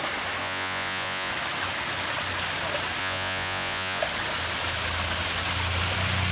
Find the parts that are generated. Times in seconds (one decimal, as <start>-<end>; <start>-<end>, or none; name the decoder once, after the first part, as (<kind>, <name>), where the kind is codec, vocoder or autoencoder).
0.4-1.3 (vocoder, Vocos); 3.0-4.0